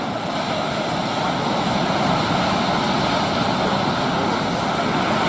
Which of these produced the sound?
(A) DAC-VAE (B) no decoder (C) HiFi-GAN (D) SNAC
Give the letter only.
B